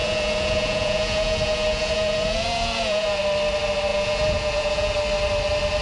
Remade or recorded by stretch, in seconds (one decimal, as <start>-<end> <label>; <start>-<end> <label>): 0.0-3.2 remade; 3.2-3.9 recorded; 3.9-4.9 remade; 4.9-5.8 recorded